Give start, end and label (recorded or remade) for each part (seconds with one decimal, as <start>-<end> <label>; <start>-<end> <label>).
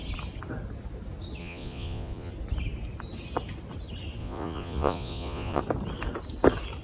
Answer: 0.0-1.4 recorded; 1.4-2.3 remade; 2.3-4.2 recorded; 4.2-5.6 remade; 5.6-6.8 recorded